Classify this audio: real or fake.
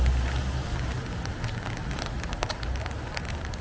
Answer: real